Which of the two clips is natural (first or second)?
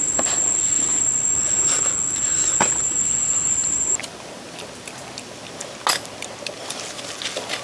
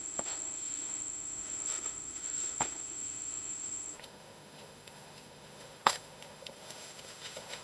first